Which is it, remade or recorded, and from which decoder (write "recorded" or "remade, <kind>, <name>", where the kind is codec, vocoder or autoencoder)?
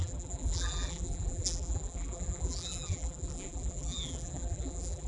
remade, vocoder, BigVGAN v2